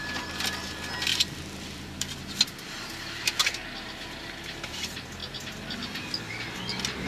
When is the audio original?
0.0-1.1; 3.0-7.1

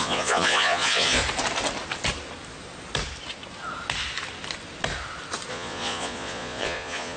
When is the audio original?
1.2-5.5